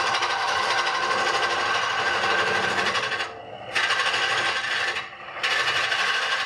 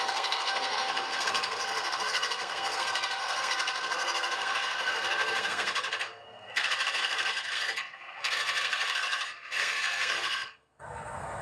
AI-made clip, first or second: second